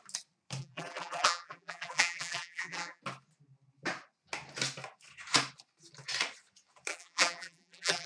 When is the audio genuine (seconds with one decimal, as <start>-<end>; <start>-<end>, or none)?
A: 0.0-0.6; 3.0-6.9